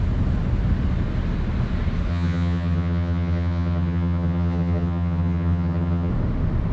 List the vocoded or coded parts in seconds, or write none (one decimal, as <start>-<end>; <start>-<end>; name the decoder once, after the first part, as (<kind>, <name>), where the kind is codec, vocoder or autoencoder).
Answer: 2.1-6.1 (vocoder, HiFi-GAN)